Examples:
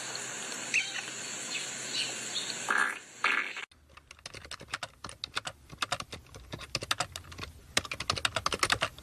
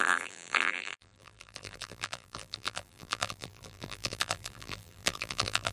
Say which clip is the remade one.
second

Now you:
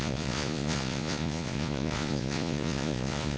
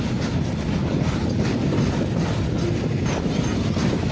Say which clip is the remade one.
first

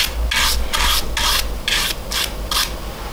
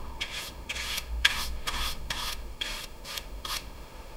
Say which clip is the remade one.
second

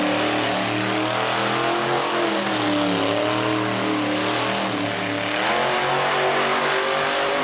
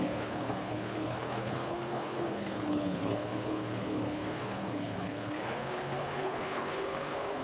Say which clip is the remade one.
second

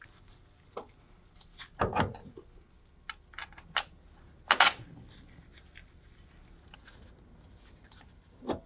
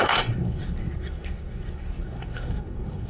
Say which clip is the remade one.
second